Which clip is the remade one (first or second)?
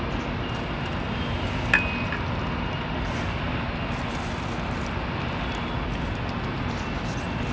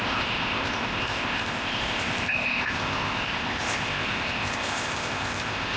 second